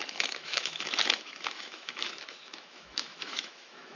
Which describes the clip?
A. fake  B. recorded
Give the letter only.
A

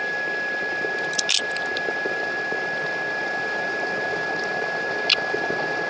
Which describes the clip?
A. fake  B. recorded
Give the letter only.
B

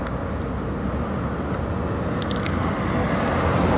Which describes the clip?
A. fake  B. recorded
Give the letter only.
B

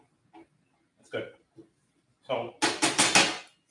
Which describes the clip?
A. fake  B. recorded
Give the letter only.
B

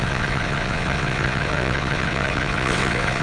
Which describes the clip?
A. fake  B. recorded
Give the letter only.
A